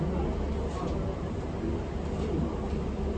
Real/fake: real